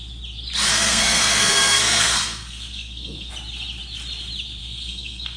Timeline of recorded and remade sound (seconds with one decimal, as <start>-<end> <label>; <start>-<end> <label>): 0.0-0.7 recorded; 0.7-3.3 remade; 3.3-4.6 recorded; 4.6-5.4 remade